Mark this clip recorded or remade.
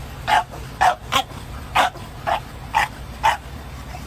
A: recorded